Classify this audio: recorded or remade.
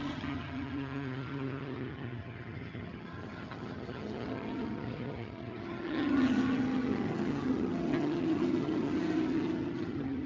remade